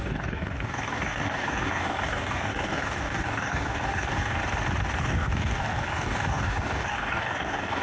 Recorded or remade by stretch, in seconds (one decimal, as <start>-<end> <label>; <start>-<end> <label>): 0.0-4.4 remade; 4.4-5.0 recorded; 5.0-7.8 remade